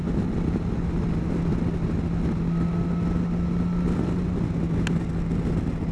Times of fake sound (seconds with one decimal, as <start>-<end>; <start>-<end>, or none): none